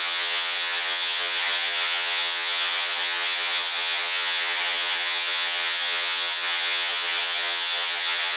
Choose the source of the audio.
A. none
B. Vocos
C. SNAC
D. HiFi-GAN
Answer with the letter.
D